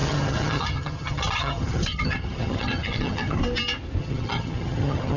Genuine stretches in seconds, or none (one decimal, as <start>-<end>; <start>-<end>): 3.4-4.0

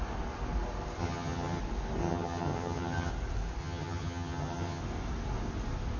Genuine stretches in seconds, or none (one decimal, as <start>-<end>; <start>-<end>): 0.0-1.0; 1.6-2.0; 3.1-3.6; 4.8-6.0